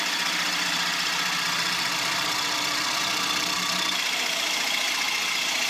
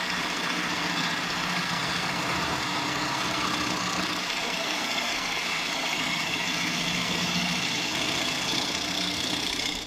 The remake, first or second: second